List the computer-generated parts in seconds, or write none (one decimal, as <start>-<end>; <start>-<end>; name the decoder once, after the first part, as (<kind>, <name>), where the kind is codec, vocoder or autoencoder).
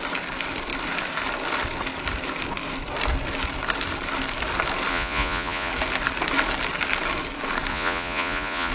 4.9-5.7 (vocoder, Vocos); 7.7-8.7